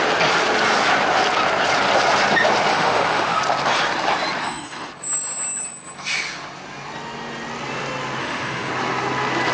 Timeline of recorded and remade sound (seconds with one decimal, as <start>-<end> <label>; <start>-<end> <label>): 0.0-2.7 recorded; 2.7-3.4 remade; 3.4-4.4 recorded; 4.4-4.9 remade; 4.9-8.2 recorded; 8.2-8.7 remade; 8.7-9.5 recorded